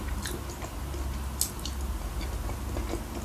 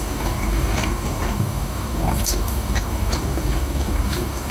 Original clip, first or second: first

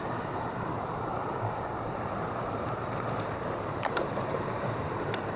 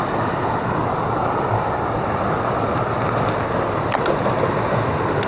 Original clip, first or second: second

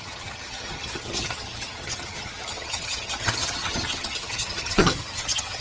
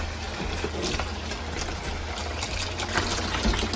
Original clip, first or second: second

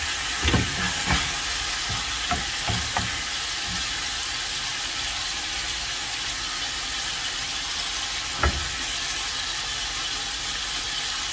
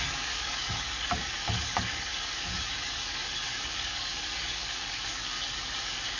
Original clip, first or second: first